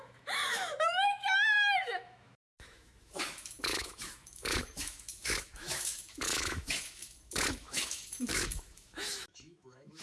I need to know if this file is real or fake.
fake